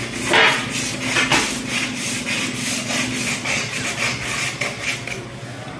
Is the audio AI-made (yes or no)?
no